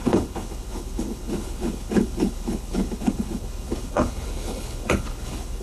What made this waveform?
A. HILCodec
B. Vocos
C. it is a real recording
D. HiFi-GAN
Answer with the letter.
A